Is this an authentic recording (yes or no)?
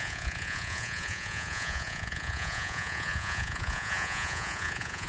no